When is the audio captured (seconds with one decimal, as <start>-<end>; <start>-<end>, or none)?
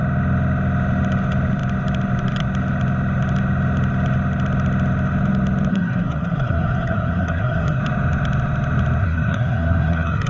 0.0-5.7; 7.8-9.0